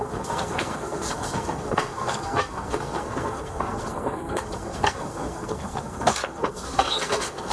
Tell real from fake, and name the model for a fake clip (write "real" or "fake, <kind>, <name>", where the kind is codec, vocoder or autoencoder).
fake, codec, SNAC